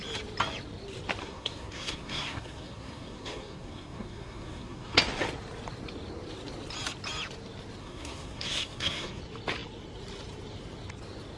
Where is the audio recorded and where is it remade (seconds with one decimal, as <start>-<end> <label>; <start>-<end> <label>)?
0.0-1.2 recorded; 1.2-5.0 remade; 5.0-7.8 recorded; 7.8-9.2 remade; 9.2-11.4 recorded